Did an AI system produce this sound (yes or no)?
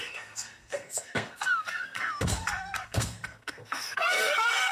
yes